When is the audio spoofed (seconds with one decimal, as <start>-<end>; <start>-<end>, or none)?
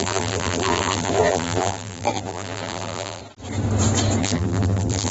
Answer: 0.0-3.2; 4.2-5.1